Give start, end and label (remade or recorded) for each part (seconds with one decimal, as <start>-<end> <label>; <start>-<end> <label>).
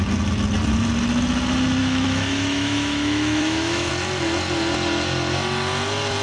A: 0.0-1.8 recorded; 1.8-3.9 remade; 3.9-6.2 recorded